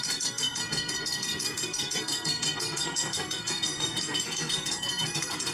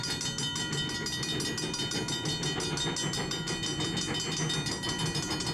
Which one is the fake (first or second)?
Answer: first